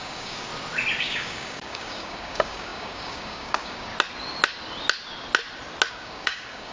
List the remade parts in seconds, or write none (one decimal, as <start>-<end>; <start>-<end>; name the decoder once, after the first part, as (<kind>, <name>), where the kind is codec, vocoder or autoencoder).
0.0-0.5 (codec, DAC); 1.0-3.9; 5.9-6.7